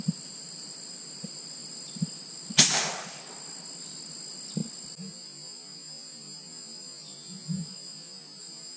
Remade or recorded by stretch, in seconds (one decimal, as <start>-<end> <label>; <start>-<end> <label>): 0.0-8.8 recorded

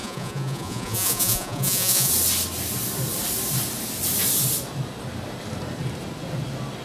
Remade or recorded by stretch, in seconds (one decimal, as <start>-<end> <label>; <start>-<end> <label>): 0.0-2.1 remade; 2.1-6.8 recorded

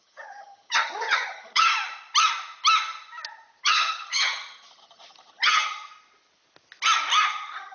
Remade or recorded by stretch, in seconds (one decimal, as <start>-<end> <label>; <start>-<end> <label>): 0.0-1.7 remade; 1.7-3.6 recorded; 3.6-5.9 remade; 5.9-7.2 recorded; 7.2-7.7 remade

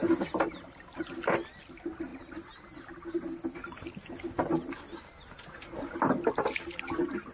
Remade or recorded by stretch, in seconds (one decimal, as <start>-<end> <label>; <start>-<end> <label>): 0.0-7.3 recorded

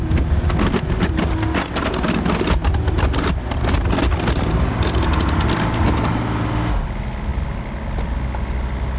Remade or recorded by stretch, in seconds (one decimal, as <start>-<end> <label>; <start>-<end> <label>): 0.0-9.0 recorded

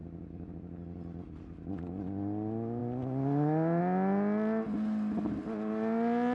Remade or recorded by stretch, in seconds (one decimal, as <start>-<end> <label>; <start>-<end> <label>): 0.0-6.3 recorded

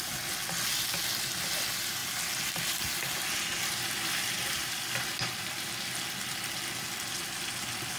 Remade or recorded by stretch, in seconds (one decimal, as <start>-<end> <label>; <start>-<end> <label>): 0.0-8.0 recorded

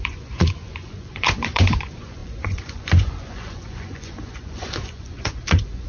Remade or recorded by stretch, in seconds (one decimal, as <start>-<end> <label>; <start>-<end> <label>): 0.0-5.9 remade